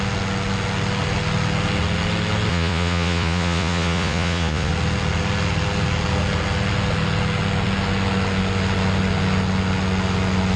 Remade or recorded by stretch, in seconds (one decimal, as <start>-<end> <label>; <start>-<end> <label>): 0.0-2.5 recorded; 2.5-4.7 remade; 4.7-10.6 recorded